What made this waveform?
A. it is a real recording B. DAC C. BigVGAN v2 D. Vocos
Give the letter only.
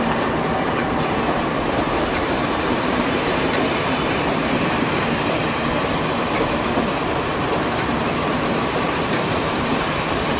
C